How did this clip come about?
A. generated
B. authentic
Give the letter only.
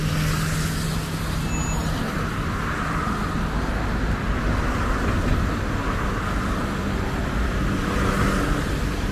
B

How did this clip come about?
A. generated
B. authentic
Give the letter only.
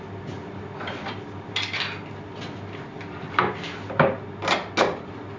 B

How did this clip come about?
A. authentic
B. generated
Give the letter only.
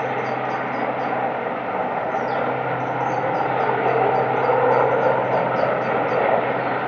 A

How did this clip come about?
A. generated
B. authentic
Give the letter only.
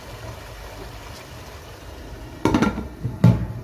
B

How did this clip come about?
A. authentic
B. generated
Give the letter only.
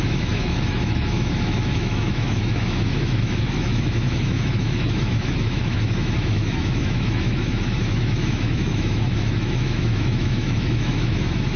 B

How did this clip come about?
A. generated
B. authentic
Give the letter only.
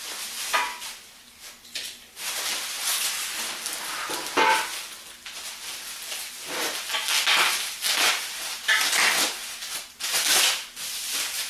B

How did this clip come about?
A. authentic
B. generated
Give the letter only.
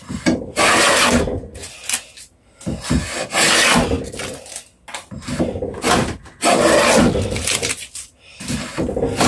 A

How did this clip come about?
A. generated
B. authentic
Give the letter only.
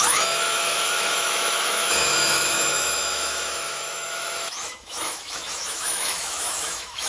A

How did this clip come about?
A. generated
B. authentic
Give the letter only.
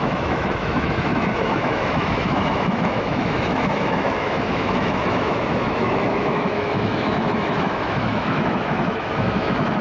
A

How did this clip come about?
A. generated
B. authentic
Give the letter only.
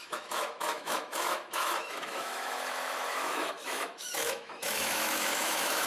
A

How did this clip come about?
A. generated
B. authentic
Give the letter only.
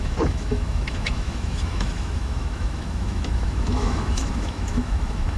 A